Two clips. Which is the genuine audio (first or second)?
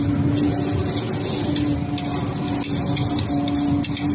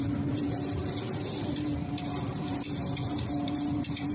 first